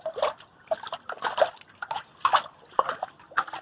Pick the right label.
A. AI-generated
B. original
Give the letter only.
B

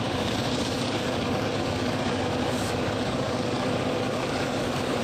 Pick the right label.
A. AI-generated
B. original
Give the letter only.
A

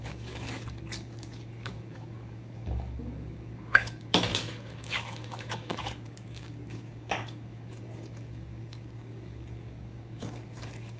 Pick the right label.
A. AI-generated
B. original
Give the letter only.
A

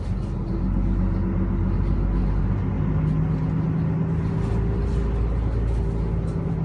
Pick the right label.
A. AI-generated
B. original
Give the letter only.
B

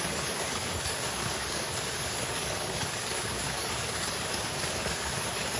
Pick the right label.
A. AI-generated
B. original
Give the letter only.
A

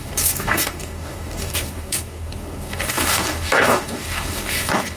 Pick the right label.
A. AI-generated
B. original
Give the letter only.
A